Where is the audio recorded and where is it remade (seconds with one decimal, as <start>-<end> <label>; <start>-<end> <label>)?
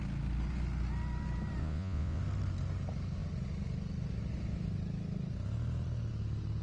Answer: 0.0-1.6 recorded; 1.6-2.2 remade; 2.2-6.6 recorded